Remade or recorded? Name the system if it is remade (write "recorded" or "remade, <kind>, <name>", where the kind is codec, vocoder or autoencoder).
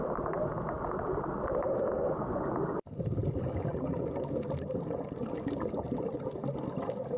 recorded